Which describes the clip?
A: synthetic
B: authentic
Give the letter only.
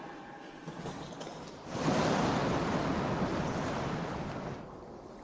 B